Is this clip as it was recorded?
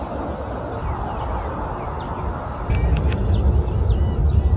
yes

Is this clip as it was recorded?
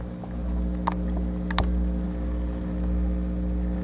yes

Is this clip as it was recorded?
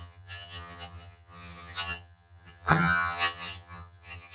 no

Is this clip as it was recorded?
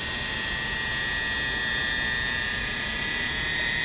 yes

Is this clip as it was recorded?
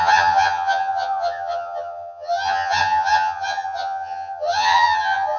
no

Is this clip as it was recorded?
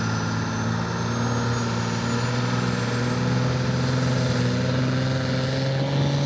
yes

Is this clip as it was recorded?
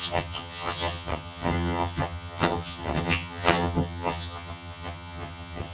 no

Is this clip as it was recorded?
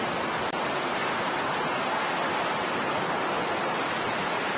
yes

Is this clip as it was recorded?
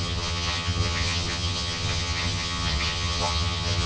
no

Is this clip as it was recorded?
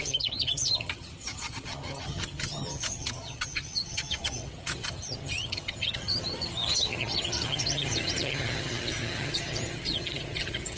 no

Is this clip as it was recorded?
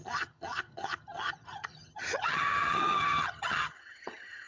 no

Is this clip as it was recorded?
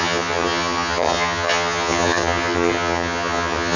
no